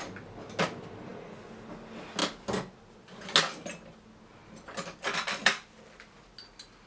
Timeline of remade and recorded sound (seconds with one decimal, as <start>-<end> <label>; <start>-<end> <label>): 0.0-6.9 recorded